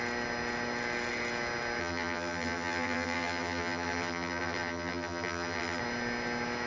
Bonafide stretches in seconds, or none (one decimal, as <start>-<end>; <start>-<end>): 0.0-1.8; 5.8-6.7